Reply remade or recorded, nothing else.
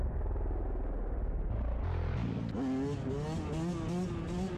recorded